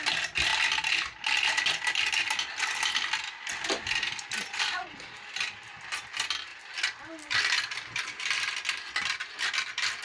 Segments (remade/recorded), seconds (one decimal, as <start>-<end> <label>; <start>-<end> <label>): 0.0-10.0 recorded

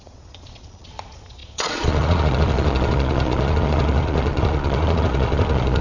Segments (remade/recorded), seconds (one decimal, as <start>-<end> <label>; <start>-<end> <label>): 0.0-5.8 remade